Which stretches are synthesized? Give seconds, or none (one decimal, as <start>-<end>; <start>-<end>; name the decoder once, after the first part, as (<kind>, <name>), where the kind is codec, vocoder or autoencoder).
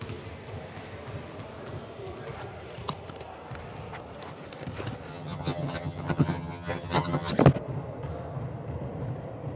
5.1-7.3 (vocoder, HiFi-GAN)